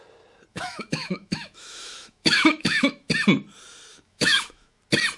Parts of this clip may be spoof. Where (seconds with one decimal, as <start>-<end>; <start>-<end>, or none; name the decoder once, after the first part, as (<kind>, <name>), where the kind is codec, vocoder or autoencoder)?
0.5-3.1 (autoencoder, DAC-VAE); 3.9-4.8